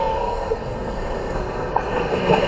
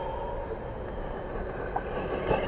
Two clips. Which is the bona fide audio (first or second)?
second